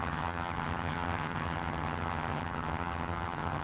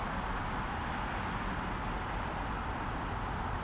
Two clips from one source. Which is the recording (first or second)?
second